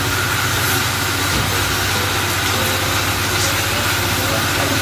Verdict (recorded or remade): recorded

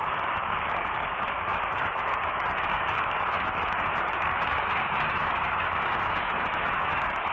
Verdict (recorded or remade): remade